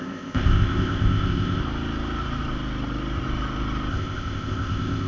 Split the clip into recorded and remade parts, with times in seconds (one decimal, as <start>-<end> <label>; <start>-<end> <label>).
0.0-1.6 remade; 1.6-3.9 recorded; 3.9-5.1 remade